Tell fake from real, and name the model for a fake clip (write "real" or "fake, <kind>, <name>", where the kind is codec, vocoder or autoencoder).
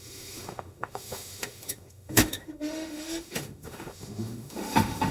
fake, autoencoder, DAC-VAE